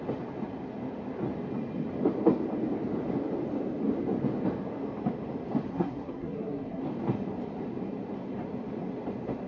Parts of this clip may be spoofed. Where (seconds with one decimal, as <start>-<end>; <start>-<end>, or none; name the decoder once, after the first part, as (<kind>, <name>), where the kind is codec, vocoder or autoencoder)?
5.7-6.8 (codec, SNAC)